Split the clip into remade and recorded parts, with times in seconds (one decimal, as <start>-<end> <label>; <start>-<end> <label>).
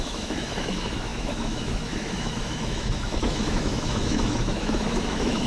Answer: 0.0-5.5 remade